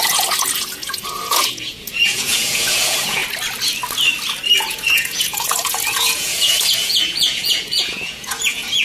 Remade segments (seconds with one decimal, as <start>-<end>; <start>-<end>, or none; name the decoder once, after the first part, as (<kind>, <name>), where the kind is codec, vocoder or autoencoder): 0.0-3.2 (vocoder, Vocos); 4.7-8.8